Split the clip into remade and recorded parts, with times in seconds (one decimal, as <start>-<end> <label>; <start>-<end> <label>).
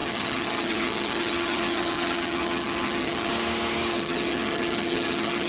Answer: 0.0-3.3 remade; 3.3-3.9 recorded; 3.9-5.5 remade